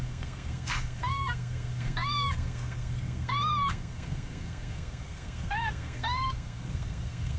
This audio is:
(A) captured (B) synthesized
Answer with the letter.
B